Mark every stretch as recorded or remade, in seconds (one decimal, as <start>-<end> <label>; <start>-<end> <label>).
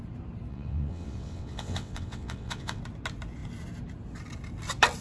0.0-0.5 recorded; 0.5-2.8 remade; 2.8-5.0 recorded